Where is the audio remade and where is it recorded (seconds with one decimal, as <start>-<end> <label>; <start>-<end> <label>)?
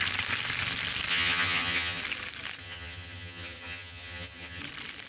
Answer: 0.0-1.1 recorded; 1.1-2.0 remade; 2.0-2.6 recorded; 2.6-4.6 remade; 4.6-5.1 recorded